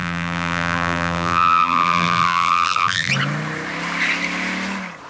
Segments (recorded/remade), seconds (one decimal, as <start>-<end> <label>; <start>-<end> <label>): 0.0-3.1 remade; 3.1-5.1 recorded